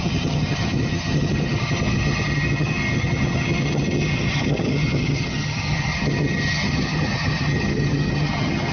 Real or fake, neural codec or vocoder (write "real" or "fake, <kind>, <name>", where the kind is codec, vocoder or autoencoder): fake, vocoder, HiFi-GAN